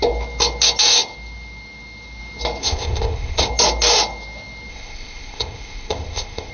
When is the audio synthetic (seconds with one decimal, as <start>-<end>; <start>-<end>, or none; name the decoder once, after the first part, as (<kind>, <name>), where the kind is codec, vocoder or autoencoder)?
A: 2.6-3.5 (codec, ZipCodec); 4.7-6.5